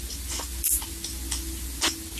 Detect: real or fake real